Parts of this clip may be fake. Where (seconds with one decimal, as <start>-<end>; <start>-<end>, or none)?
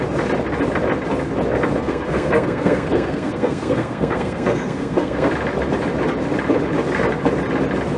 1.8-5.3